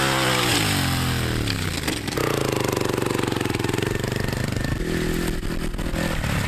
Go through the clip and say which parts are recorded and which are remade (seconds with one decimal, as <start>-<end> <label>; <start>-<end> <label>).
0.0-6.5 recorded